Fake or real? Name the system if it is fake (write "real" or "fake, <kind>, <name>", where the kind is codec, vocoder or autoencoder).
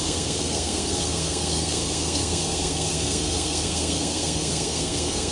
fake, codec, SNAC